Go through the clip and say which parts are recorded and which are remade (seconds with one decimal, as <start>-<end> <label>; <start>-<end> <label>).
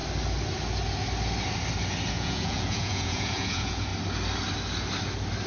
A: 0.0-2.1 recorded; 2.1-3.9 remade; 3.9-5.5 recorded